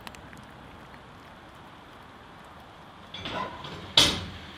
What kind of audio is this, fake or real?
real